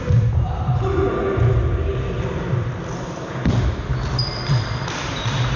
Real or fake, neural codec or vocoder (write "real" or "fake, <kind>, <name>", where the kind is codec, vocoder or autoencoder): real